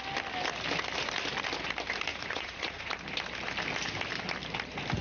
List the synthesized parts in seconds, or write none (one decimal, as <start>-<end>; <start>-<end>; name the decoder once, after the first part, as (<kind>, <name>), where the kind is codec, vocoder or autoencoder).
2.1-2.9 (vocoder, Vocos)